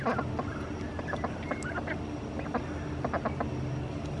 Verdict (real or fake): real